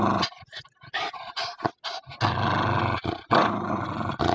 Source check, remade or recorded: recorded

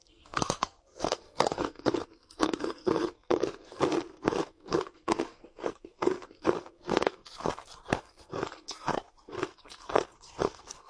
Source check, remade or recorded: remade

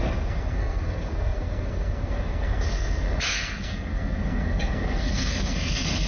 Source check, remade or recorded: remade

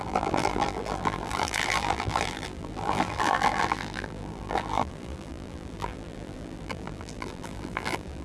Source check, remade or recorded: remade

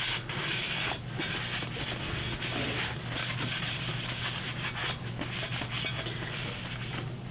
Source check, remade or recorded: recorded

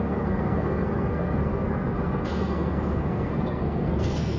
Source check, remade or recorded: remade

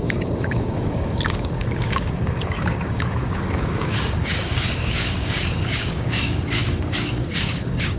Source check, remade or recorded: remade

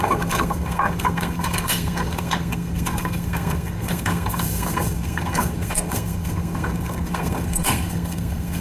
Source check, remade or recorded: remade